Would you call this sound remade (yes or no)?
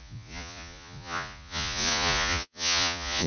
yes